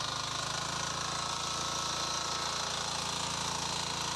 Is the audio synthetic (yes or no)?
no